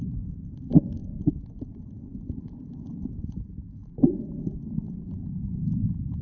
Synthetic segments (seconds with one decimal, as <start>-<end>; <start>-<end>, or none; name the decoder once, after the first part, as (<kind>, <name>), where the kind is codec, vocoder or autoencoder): 1.0-3.8 (vocoder, Vocos); 4.2-6.2